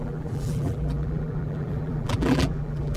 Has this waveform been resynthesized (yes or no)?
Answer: yes